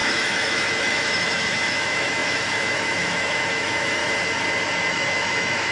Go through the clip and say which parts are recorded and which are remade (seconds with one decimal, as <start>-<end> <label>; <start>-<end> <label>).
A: 0.0-4.0 remade; 4.0-4.9 recorded; 4.9-5.7 remade